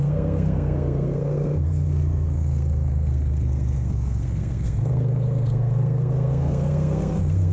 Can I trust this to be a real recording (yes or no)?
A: no